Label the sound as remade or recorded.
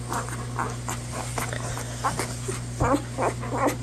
recorded